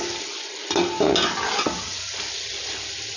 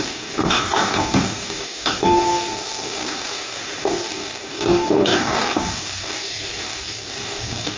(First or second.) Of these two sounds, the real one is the first